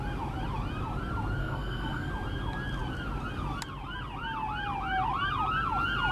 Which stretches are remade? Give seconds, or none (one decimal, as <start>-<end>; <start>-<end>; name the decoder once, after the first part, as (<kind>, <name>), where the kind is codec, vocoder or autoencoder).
1.4-2.1 (codec, SNAC)